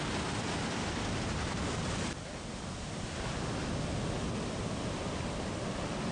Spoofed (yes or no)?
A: no